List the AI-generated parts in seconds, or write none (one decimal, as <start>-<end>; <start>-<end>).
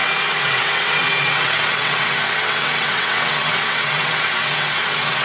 0.0-5.2